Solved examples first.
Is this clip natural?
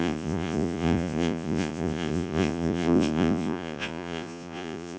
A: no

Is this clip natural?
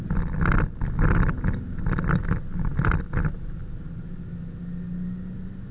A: yes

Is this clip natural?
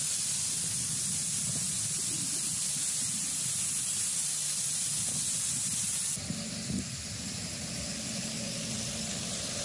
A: yes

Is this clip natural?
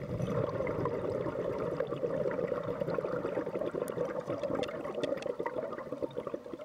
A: yes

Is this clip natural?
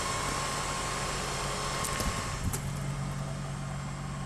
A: yes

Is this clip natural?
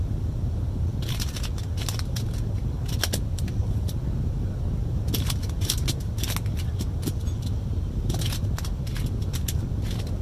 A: yes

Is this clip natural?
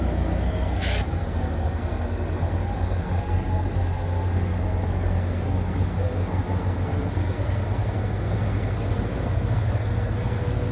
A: no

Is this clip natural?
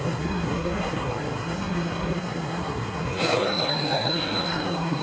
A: no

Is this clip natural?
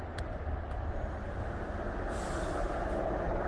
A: yes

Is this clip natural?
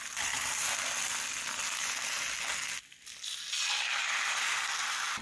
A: yes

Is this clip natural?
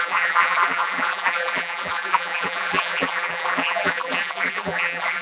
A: no